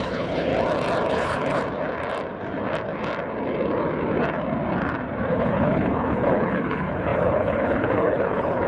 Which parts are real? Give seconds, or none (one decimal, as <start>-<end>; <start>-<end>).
0.5-1.1; 1.6-5.3